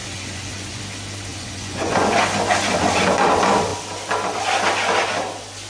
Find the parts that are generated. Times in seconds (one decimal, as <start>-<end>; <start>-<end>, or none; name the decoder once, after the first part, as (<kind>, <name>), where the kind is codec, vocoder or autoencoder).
0.0-0.8 (vocoder, Vocos); 1.3-2.1